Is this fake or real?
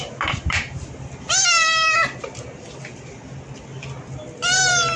real